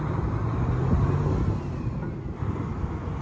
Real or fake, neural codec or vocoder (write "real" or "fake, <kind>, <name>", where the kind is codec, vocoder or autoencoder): real